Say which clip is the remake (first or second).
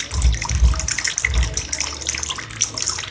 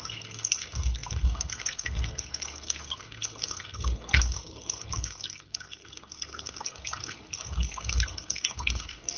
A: second